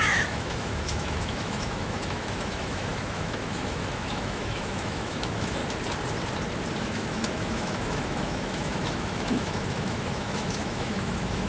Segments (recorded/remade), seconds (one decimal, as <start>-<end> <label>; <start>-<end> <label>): 0.0-5.6 remade; 5.6-6.8 recorded; 6.8-11.5 remade